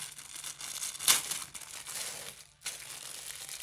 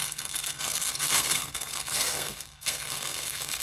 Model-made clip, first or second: second